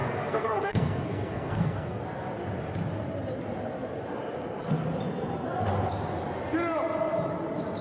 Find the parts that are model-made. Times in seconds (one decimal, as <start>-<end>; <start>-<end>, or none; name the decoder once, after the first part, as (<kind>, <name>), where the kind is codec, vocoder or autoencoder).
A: 0.0-2.0 (codec, SNAC)